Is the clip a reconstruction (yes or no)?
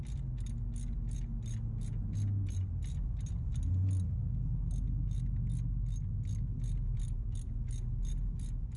no